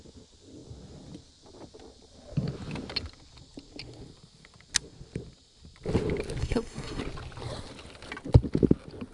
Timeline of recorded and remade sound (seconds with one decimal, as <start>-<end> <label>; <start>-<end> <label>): 0.0-6.4 recorded; 6.4-7.0 remade; 7.0-9.1 recorded